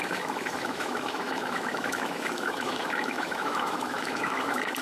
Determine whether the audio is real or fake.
fake